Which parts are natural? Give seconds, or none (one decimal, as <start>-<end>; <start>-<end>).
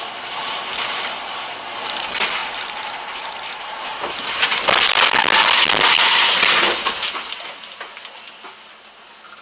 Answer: 0.0-9.4